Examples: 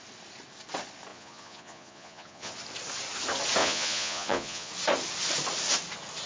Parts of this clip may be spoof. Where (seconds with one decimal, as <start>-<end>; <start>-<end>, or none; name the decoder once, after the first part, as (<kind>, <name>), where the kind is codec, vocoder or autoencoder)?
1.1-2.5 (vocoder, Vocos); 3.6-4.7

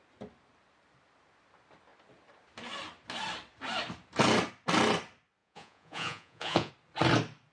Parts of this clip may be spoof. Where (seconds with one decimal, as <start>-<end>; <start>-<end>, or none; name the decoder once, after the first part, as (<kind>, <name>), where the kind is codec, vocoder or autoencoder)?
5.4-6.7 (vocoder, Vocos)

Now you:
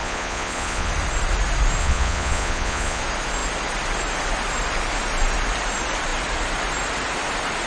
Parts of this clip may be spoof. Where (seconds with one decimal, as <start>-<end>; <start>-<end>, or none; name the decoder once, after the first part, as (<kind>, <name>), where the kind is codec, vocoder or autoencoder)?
0.0-0.9 (vocoder, Vocos); 1.8-3.0

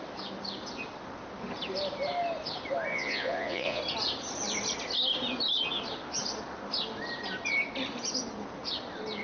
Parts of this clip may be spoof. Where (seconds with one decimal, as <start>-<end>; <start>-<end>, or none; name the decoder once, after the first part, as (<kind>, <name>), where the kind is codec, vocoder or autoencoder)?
2.9-3.8 (vocoder, Vocos)

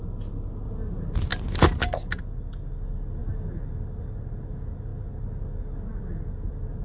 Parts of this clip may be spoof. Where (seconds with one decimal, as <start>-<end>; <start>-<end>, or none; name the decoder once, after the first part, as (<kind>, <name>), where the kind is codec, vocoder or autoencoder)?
none

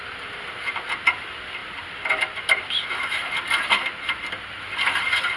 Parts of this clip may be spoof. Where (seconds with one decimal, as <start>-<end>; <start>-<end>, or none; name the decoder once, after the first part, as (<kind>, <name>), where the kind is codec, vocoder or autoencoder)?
none

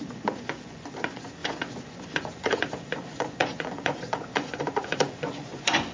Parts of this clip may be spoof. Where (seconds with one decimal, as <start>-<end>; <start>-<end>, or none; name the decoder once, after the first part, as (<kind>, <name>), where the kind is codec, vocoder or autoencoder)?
0.0-5.9 (vocoder, Vocos)

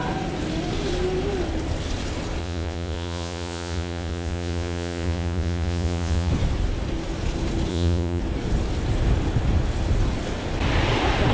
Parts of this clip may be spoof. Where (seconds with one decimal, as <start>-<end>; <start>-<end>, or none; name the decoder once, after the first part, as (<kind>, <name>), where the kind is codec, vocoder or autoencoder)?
2.4-6.3 (vocoder, Vocos); 7.7-8.2